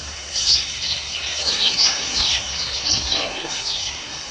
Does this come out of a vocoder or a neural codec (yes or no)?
yes